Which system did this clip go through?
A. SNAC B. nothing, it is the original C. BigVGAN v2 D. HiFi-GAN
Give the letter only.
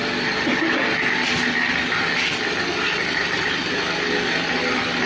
B